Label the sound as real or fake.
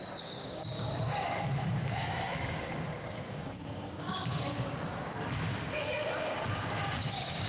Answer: fake